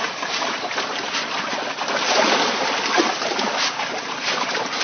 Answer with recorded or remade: recorded